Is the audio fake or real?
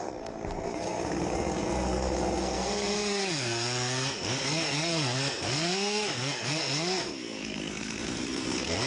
fake